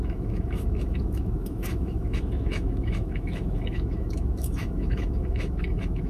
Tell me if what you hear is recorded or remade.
remade